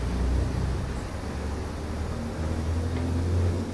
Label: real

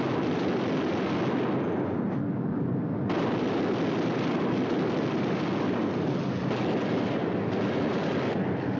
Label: real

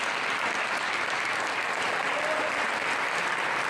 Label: real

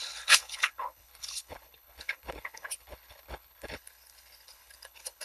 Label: fake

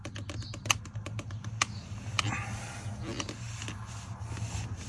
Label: real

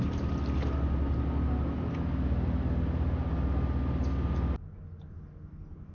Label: real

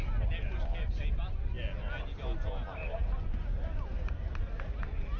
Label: real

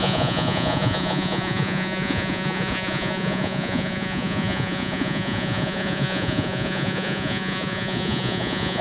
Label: fake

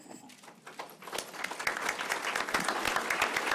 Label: real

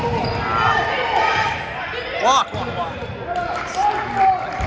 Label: real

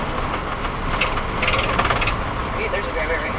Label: real